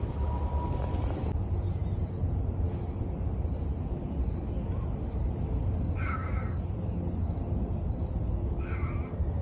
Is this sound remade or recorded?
recorded